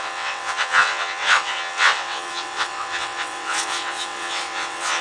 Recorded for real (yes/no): no